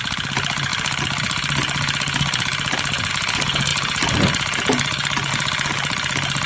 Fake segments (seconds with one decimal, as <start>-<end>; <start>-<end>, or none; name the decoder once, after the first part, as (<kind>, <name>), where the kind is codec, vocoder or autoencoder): none